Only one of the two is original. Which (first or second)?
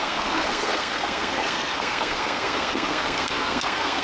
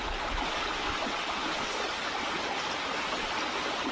second